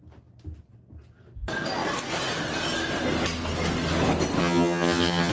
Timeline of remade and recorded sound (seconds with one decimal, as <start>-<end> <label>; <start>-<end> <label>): 0.0-4.4 recorded; 4.4-5.3 remade